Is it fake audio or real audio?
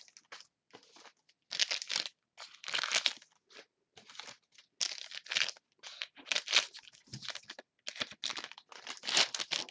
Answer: real